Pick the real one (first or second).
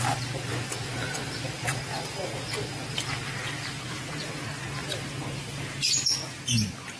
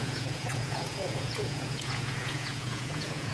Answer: first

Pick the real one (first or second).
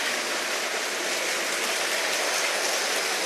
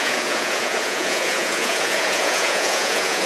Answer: first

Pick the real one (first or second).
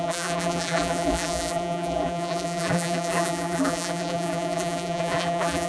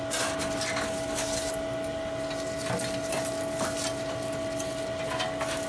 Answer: second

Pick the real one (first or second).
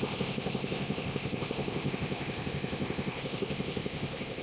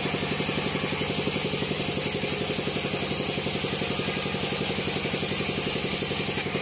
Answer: second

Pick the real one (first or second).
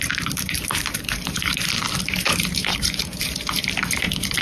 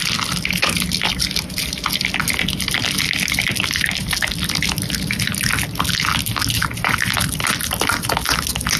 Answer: second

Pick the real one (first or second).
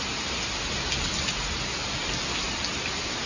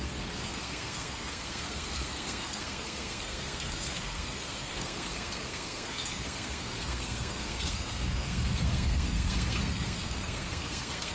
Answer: first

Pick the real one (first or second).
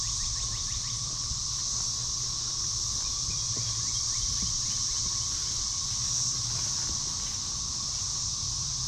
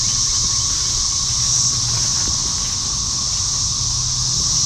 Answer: second